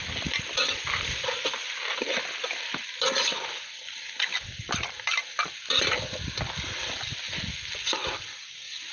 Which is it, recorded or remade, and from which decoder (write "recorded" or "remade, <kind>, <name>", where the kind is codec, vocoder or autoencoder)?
recorded